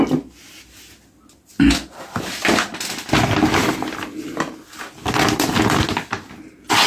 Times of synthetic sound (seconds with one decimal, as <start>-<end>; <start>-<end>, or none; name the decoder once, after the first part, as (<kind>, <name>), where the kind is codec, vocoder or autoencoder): none